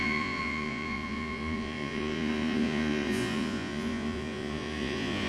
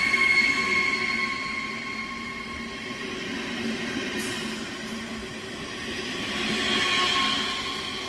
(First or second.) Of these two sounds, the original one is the second